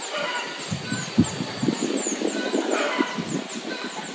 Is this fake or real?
real